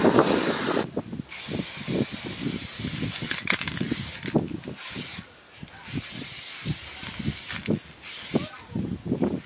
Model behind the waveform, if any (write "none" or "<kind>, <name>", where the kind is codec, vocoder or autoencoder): none